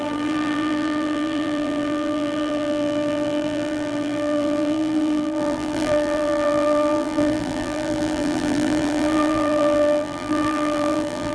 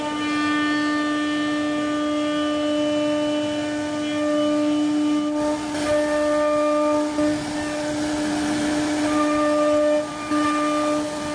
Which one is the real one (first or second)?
second